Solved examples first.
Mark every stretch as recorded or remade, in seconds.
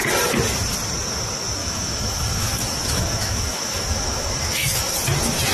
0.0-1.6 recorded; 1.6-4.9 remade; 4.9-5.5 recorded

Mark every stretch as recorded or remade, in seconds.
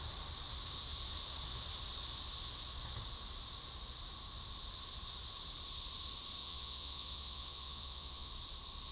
0.0-6.4 recorded; 6.4-8.3 remade; 8.3-8.9 recorded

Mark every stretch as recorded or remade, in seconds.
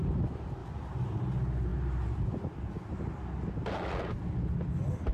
0.0-5.1 recorded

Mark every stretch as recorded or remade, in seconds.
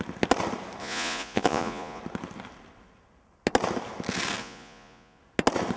0.0-0.8 recorded; 0.8-2.0 remade; 2.0-4.4 recorded; 4.4-5.2 remade; 5.2-5.8 recorded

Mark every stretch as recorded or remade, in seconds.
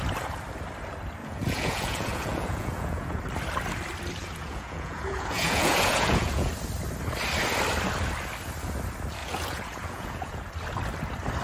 0.0-1.2 recorded; 1.2-3.2 remade; 3.2-4.2 recorded; 4.2-6.5 remade; 6.5-9.2 recorded; 9.2-10.4 remade; 10.4-11.4 recorded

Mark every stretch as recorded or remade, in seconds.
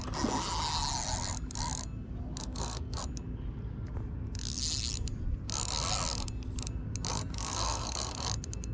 0.0-2.4 recorded; 2.4-3.0 remade; 3.0-7.1 recorded; 7.1-8.1 remade; 8.1-8.7 recorded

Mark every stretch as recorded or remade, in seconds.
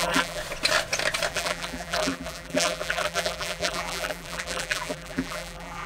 0.0-0.4 remade; 0.4-1.3 recorded; 1.3-5.9 remade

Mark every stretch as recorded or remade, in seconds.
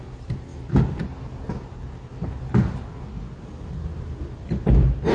0.0-5.1 recorded